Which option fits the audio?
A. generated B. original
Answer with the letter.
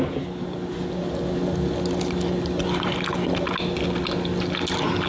B